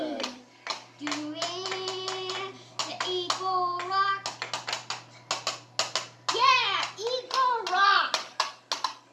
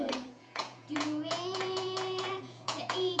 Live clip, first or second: first